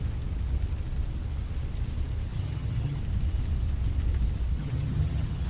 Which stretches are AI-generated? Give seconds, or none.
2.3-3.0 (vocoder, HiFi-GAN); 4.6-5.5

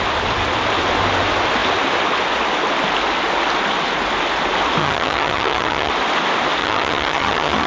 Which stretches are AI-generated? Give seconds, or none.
4.8-5.9 (vocoder, HiFi-GAN); 6.6-7.7

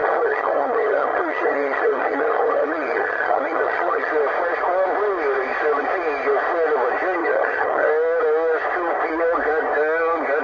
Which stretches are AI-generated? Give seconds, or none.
0.0-4.1 (vocoder, HiFi-GAN); 7.2-7.9

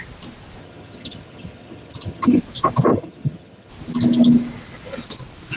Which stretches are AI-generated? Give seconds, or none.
0.6-2.4 (vocoder, HiFi-GAN); 2.9-3.7